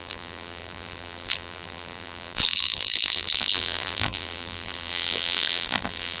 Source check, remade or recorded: remade